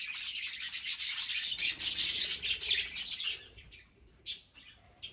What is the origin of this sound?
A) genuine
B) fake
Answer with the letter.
A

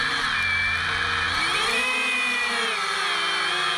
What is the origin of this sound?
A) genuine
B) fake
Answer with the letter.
A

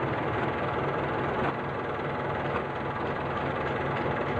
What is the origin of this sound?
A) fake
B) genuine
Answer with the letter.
B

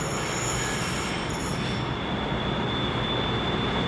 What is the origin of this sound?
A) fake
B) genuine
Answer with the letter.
B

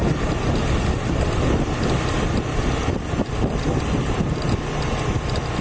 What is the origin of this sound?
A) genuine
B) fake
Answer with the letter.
A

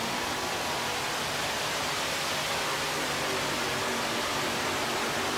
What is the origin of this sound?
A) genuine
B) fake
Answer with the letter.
A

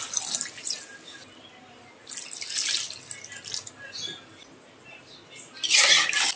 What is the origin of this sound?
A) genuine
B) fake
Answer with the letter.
A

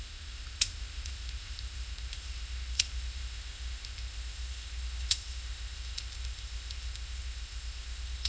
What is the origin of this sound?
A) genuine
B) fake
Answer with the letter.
B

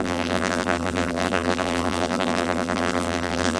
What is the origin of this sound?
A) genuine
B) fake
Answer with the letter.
B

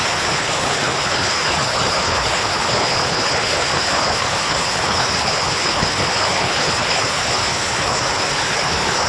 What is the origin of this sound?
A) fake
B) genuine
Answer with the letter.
A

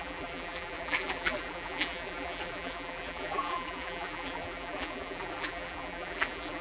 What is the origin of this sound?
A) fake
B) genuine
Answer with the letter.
A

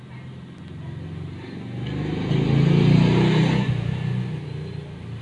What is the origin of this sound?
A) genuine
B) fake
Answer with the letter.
A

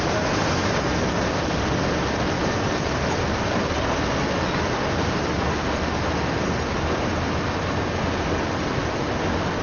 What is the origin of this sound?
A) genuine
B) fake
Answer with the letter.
B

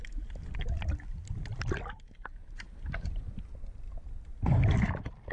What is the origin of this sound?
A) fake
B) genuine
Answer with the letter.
B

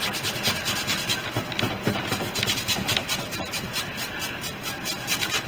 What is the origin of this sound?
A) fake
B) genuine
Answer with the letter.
B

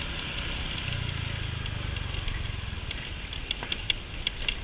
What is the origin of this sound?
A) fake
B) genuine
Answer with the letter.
B